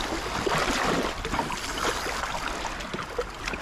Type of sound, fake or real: real